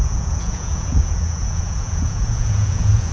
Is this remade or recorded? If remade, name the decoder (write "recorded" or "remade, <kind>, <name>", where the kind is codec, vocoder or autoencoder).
remade, vocoder, Vocos